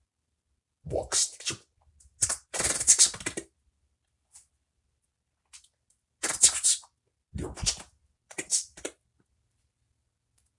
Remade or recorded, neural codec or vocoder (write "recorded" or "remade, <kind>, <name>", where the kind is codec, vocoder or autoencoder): recorded